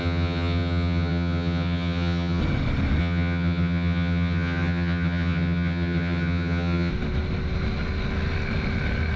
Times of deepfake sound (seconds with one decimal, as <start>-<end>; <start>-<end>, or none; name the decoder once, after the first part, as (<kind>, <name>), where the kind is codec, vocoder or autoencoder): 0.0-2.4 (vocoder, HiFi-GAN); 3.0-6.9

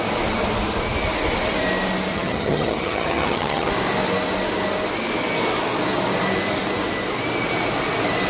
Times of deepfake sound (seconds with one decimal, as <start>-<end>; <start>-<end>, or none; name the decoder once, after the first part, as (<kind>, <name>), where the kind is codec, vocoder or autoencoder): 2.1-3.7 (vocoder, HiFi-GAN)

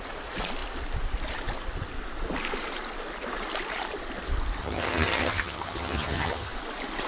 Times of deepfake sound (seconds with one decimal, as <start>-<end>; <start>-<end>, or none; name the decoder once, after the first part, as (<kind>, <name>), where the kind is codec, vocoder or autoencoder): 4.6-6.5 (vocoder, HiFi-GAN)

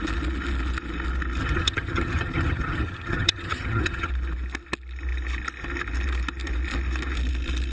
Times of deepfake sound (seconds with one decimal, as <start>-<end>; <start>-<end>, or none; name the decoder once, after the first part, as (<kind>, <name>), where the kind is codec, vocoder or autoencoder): 1.4-4.1 (vocoder, HiFi-GAN)

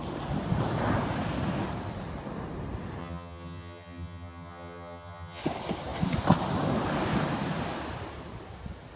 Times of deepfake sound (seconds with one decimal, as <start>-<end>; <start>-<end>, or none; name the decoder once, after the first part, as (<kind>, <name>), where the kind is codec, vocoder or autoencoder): 3.0-5.4 (vocoder, HiFi-GAN)